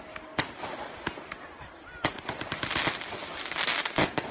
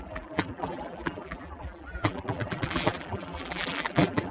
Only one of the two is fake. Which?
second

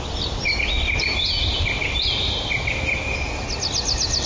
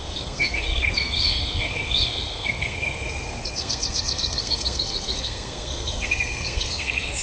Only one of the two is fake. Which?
second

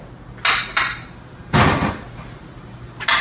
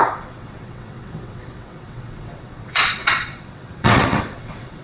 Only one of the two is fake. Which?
second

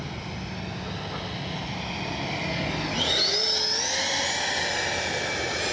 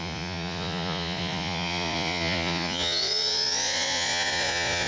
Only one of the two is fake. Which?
second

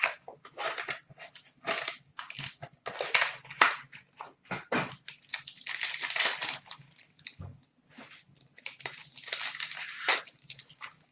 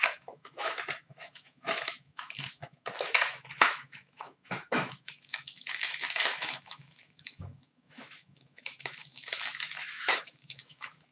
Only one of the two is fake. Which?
second